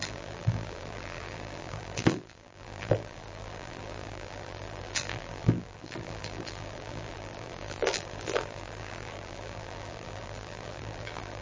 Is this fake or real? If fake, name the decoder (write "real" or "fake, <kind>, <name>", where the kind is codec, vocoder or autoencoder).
fake, vocoder, BigVGAN v2